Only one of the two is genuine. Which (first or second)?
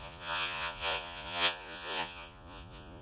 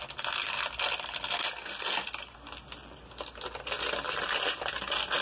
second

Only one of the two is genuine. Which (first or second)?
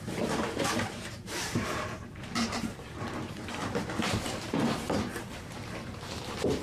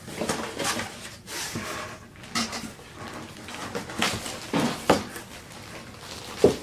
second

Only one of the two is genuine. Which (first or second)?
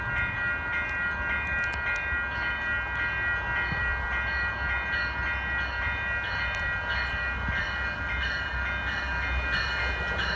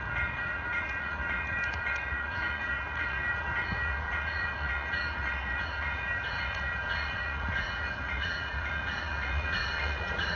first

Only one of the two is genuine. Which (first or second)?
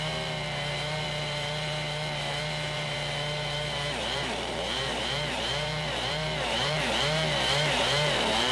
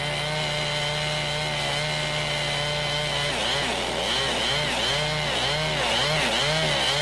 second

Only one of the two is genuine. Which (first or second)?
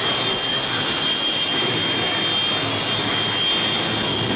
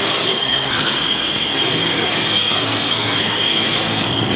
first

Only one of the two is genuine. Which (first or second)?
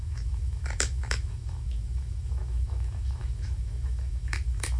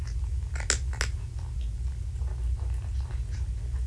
second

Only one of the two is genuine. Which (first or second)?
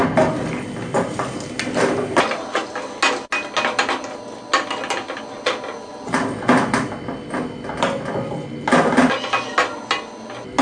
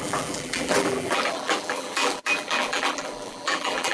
first